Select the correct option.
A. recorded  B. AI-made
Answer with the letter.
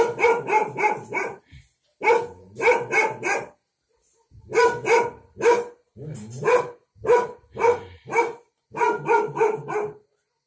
A